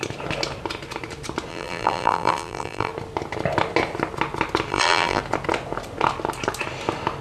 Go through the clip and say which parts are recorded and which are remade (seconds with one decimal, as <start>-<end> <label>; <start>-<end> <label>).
0.0-1.5 recorded; 1.5-2.9 remade; 2.9-4.7 recorded; 4.7-5.2 remade; 5.2-7.2 recorded